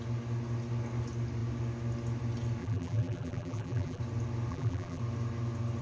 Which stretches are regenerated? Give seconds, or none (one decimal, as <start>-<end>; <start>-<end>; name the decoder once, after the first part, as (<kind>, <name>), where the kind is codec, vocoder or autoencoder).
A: 2.6-4.0 (vocoder, BigVGAN v2); 4.5-5.0